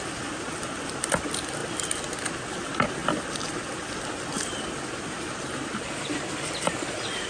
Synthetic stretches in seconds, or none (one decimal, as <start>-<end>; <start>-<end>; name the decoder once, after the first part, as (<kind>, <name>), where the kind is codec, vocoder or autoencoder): none